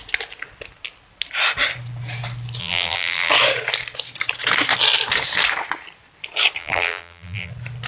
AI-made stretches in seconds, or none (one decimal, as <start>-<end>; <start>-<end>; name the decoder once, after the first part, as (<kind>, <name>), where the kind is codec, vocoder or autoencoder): 2.6-3.3 (vocoder, BigVGAN v2); 6.6-7.5